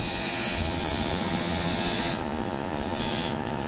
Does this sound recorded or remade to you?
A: remade